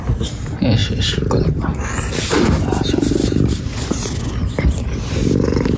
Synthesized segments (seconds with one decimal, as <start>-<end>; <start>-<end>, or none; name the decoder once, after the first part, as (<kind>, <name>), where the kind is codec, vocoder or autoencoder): none